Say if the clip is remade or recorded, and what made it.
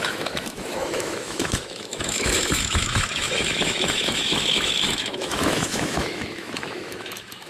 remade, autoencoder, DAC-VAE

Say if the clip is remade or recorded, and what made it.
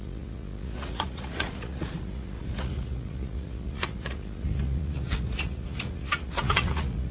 remade, vocoder, Vocos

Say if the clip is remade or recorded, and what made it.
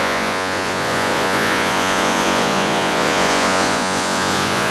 remade, vocoder, Vocos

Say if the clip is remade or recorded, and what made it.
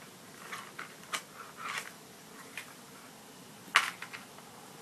recorded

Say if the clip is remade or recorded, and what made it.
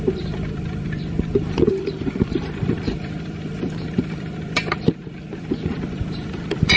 remade, vocoder, BigVGAN v2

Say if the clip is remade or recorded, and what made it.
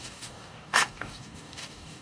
remade, codec, DAC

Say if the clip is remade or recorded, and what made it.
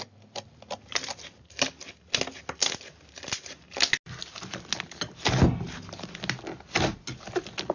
recorded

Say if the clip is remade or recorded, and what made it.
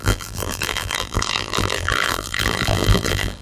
remade, vocoder, BigVGAN v2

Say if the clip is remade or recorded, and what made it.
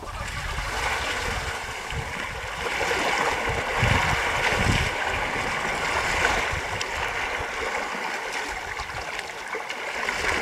recorded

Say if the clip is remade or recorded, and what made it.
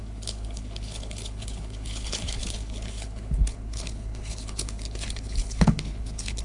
remade, codec, HILCodec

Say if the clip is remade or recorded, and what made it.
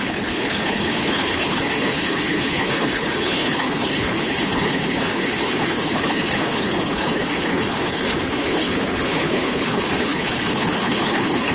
remade, codec, HILCodec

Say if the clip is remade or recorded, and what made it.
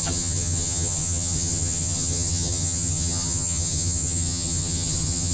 remade, vocoder, HiFi-GAN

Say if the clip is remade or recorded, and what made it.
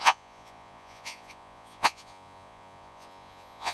remade, vocoder, Vocos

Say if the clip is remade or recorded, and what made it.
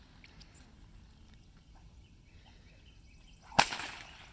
recorded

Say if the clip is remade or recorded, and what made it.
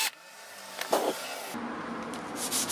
recorded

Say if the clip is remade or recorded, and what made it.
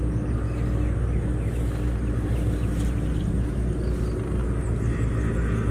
recorded